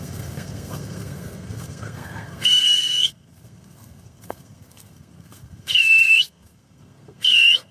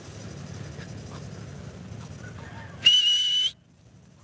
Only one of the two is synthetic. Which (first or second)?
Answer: first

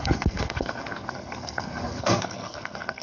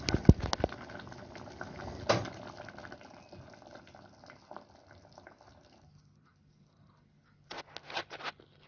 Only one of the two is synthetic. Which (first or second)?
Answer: first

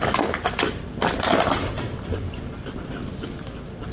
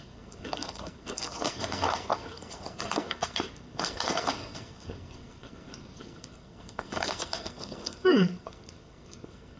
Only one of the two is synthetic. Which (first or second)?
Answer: second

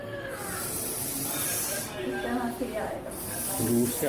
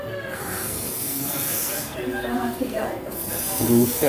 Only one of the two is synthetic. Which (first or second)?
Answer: second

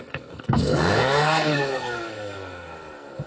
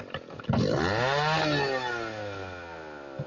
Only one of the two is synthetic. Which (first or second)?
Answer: first